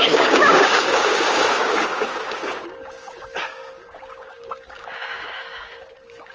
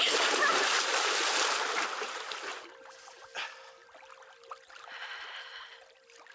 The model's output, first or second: first